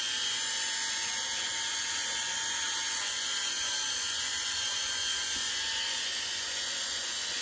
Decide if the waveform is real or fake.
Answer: fake